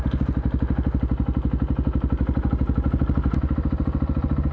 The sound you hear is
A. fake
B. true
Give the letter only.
B